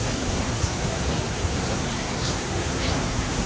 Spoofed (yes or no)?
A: yes